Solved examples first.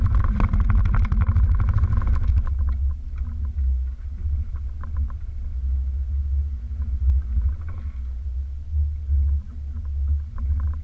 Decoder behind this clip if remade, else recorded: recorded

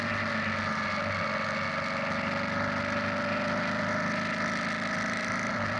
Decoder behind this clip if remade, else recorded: recorded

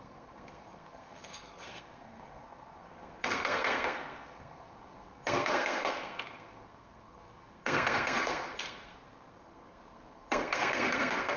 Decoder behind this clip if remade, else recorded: remade, codec, SNAC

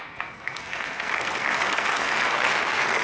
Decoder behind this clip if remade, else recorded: remade, codec, SNAC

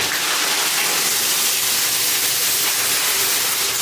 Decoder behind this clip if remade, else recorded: recorded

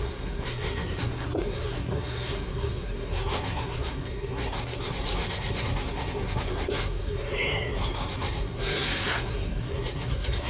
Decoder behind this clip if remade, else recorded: remade, codec, SNAC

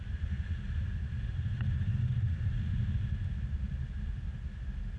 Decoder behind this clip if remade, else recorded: recorded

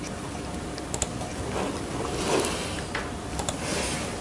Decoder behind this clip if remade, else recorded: recorded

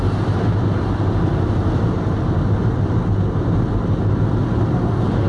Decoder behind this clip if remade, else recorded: recorded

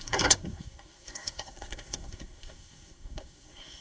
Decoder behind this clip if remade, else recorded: remade, codec, SNAC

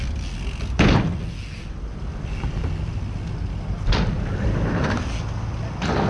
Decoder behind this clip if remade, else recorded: recorded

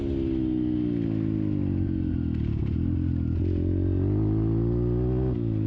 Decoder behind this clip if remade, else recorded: recorded